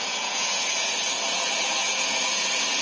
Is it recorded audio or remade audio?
remade